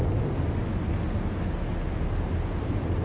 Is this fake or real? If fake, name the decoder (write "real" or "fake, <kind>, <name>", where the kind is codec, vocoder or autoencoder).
real